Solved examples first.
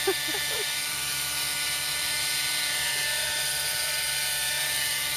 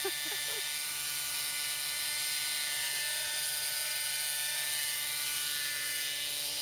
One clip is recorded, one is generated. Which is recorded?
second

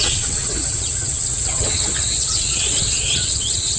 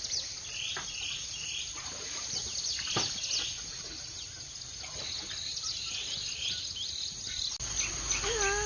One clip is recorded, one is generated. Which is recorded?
second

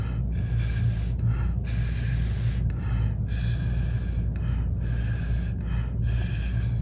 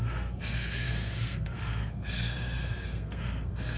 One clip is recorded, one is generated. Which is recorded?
first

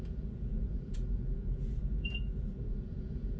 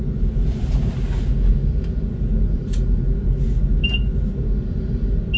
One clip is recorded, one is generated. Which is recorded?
second